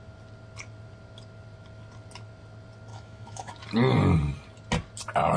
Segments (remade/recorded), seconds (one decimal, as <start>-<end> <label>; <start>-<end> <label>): 0.0-2.9 recorded; 2.9-3.5 remade; 3.5-5.4 recorded